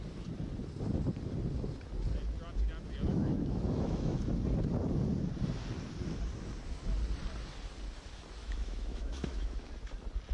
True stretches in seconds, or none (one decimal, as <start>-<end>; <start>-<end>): 0.0-3.1; 4.3-8.4; 9.7-10.3